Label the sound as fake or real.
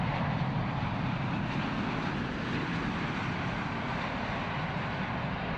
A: real